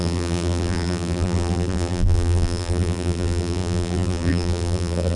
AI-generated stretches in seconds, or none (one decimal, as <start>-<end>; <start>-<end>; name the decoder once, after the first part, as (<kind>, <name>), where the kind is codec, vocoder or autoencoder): 0.0-5.2 (vocoder, BigVGAN v2)